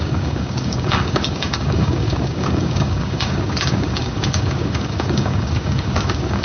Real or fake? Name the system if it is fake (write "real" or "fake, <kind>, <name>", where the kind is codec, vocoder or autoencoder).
fake, codec, DAC